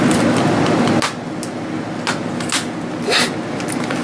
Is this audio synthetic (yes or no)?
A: no